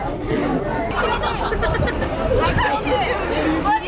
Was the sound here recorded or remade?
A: recorded